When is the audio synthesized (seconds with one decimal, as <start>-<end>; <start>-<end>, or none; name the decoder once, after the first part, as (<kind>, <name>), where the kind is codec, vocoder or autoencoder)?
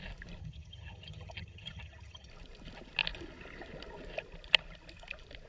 0.4-2.3 (vocoder, HiFi-GAN)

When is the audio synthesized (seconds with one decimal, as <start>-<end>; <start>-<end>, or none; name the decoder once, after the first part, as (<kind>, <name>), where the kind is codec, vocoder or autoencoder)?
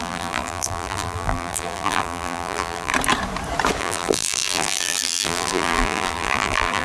0.0-2.9 (vocoder, BigVGAN v2); 3.8-6.8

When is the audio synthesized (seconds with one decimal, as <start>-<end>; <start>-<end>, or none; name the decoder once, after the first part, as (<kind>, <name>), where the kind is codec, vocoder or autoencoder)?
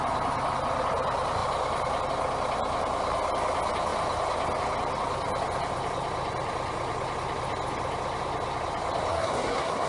9.1-9.9 (codec, SNAC)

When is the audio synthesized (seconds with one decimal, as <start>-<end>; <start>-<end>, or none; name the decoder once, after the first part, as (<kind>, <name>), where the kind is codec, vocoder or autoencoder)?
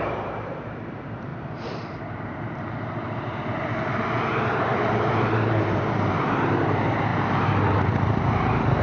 0.0-7.1 (vocoder, BigVGAN v2); 8.1-8.8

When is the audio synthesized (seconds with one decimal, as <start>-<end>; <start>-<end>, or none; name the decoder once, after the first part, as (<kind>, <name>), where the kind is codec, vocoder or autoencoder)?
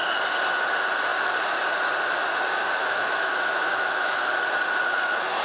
2.8-4.2 (autoencoder, DAC-VAE)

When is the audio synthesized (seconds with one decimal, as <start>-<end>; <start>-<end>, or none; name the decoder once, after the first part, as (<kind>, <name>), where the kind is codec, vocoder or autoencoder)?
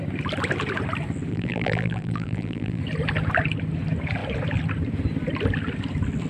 1.3-2.8 (vocoder, BigVGAN v2)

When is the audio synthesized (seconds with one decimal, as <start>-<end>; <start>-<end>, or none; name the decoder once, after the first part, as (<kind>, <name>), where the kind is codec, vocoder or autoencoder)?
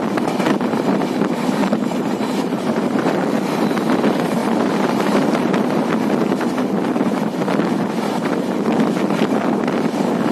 1.6-3.1 (vocoder, BigVGAN v2); 4.4-5.9